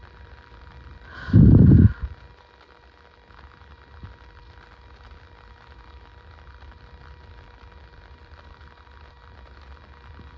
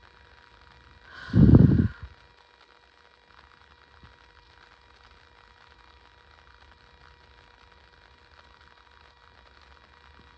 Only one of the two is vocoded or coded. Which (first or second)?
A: first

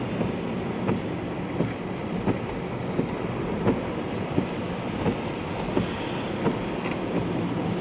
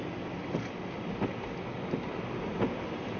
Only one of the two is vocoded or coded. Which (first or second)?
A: first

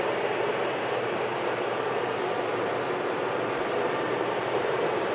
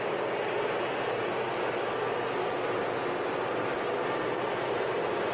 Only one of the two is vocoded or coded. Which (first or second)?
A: first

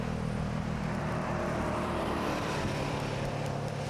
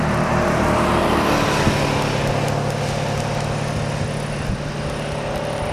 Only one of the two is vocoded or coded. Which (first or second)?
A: first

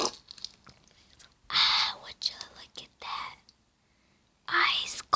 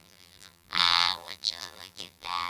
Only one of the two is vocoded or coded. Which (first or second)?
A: second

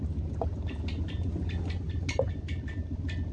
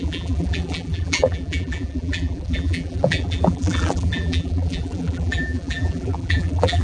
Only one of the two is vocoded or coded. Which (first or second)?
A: second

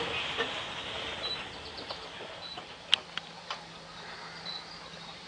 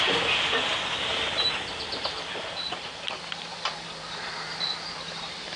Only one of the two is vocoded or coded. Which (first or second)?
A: second